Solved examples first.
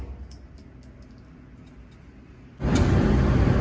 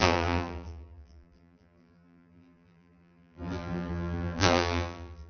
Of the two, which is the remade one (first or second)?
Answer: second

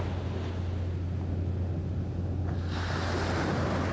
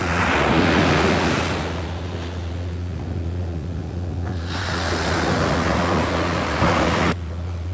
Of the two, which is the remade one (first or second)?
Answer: second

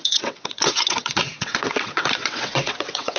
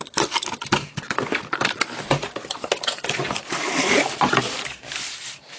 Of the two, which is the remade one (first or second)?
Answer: first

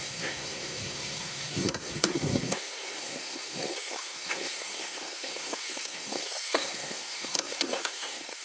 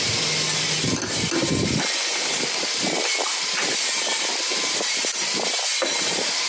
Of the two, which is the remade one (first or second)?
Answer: first